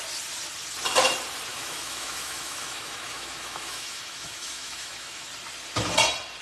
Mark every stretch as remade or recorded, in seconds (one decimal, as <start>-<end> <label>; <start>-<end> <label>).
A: 0.0-1.5 recorded; 1.5-5.3 remade; 5.3-6.4 recorded

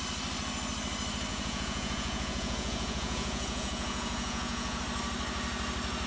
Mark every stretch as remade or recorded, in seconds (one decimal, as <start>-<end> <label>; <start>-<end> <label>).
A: 0.0-1.3 recorded; 1.3-4.8 remade; 4.8-6.1 recorded

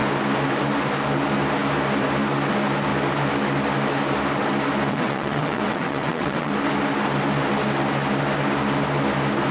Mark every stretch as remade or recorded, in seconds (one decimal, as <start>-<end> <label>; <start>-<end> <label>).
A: 0.0-4.9 recorded; 4.9-6.5 remade; 6.5-9.5 recorded

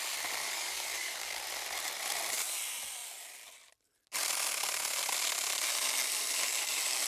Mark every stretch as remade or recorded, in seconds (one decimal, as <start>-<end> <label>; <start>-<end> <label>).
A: 0.0-0.4 recorded; 0.4-1.4 remade; 1.4-7.1 recorded

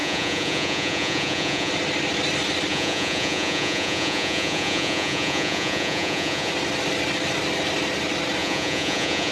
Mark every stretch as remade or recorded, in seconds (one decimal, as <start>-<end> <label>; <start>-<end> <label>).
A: 0.0-1.7 remade; 1.7-2.7 recorded; 2.7-6.5 remade; 6.5-8.4 recorded; 8.4-9.3 remade

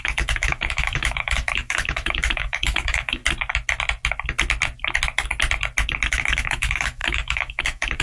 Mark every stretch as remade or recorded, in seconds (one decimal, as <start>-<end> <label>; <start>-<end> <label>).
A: 0.0-3.2 remade; 3.2-6.1 recorded; 6.1-8.0 remade